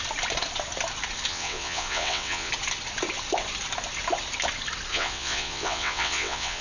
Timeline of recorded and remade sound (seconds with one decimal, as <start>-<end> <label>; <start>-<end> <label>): 0.0-1.3 recorded; 1.3-2.5 remade; 2.5-4.9 recorded; 4.9-6.6 remade

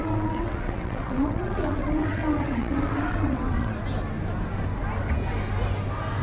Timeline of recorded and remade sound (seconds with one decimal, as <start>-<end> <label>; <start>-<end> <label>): 0.0-3.7 remade; 3.7-6.2 recorded

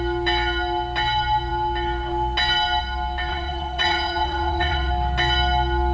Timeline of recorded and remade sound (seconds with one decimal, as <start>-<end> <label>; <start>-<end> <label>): 0.0-3.3 recorded; 3.3-4.9 remade; 4.9-5.9 recorded